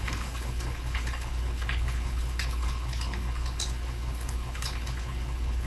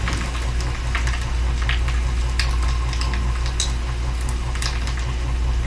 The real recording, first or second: second